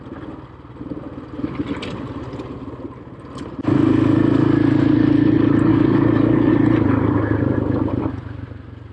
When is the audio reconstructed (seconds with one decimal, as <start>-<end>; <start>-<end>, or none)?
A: 5.7-6.5